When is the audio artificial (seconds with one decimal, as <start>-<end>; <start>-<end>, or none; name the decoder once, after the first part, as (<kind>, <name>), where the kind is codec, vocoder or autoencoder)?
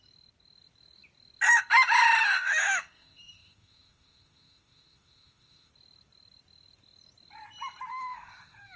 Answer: 2.2-5.7 (autoencoder, DAC-VAE); 7.9-8.8